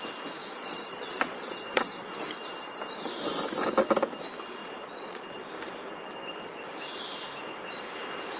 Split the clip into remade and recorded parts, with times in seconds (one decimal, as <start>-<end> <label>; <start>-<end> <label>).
0.0-0.4 recorded; 0.4-2.1 remade; 2.1-4.6 recorded; 4.6-5.4 remade; 5.4-8.4 recorded